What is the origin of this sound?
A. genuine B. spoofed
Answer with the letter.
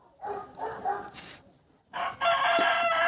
B